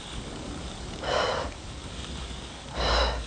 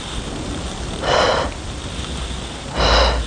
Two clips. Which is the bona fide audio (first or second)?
second